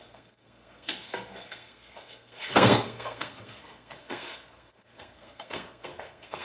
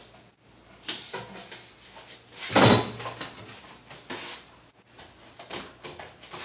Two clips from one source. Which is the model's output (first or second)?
first